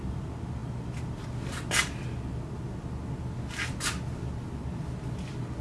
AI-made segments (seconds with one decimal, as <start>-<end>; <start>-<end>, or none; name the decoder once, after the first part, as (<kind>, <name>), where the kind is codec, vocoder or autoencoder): none